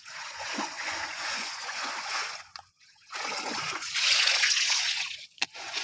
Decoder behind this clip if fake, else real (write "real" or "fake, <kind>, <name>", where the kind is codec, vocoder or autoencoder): fake, vocoder, Vocos